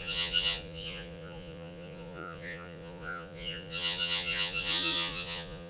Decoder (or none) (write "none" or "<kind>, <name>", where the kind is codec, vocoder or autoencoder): vocoder, Vocos